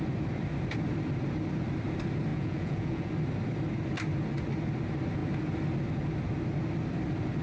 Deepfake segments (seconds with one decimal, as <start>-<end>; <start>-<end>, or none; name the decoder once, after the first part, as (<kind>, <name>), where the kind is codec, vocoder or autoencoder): 2.3-3.1 (vocoder, Vocos)